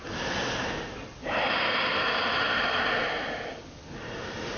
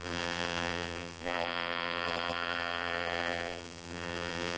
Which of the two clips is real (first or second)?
first